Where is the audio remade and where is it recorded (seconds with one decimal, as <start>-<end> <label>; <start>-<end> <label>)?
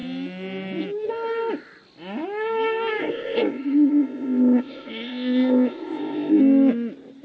0.0-3.0 recorded; 3.0-6.4 remade; 6.4-7.2 recorded